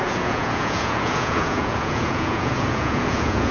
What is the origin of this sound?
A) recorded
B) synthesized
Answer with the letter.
B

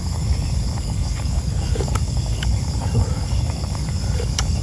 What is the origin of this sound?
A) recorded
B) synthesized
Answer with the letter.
B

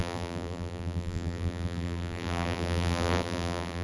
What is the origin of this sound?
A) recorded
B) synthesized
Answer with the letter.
B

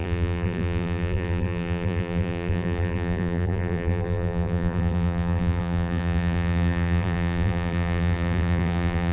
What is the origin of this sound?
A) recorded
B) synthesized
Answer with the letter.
B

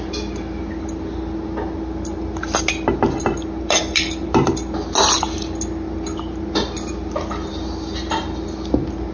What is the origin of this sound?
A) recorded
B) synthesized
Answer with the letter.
A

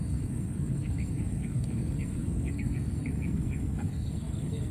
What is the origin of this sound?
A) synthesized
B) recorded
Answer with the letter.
A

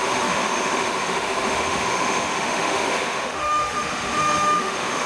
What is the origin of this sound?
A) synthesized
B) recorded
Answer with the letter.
A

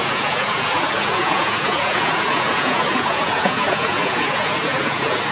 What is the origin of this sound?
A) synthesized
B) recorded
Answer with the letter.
A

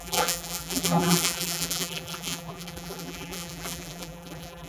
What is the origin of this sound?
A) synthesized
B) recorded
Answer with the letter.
A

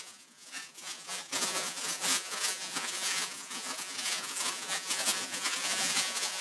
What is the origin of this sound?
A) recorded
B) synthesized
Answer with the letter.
B